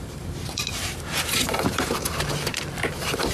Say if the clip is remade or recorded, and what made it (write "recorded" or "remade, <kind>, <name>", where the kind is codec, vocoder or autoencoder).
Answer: remade, vocoder, BigVGAN v2